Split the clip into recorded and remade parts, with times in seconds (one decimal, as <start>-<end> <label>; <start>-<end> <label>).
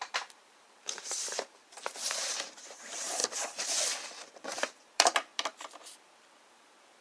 0.0-3.2 remade; 3.2-4.3 recorded; 4.3-7.0 remade